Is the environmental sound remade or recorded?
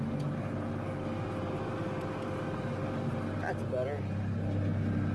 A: recorded